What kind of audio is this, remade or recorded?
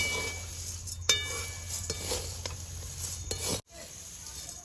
recorded